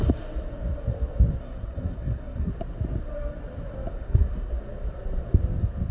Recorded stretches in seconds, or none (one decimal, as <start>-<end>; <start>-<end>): 0.0-1.4; 2.5-3.9; 4.5-5.9